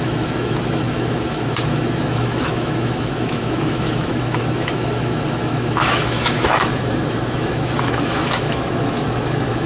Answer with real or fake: fake